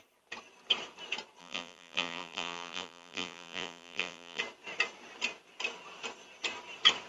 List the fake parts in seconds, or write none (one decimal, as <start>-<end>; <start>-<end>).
1.4-4.4